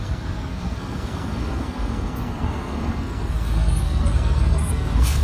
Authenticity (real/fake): fake